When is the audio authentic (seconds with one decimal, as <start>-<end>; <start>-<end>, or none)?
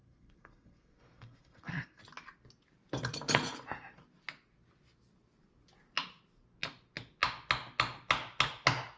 2.0-9.0